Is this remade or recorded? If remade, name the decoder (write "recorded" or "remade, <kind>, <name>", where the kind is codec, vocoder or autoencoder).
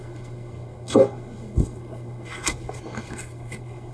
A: remade, codec, SNAC